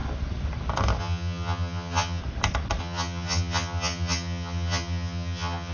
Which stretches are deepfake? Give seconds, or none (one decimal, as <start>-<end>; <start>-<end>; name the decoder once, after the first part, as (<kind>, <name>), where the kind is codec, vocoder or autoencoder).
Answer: 1.0-2.2 (vocoder, HiFi-GAN); 2.8-5.7